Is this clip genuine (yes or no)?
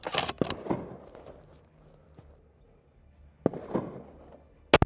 yes